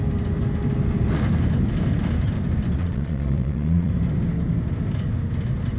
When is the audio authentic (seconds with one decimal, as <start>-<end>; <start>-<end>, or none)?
0.0-2.8; 3.9-5.8